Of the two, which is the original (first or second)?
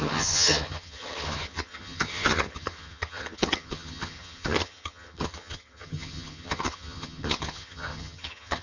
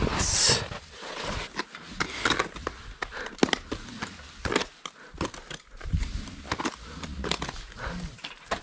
second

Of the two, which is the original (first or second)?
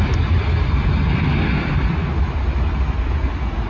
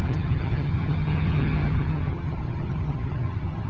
first